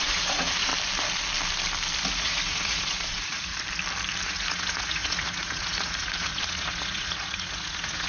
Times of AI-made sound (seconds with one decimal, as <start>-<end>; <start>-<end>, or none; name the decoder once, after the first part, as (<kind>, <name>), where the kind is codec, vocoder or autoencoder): 0.0-0.7 (vocoder, Vocos); 2.1-3.5; 4.2-8.1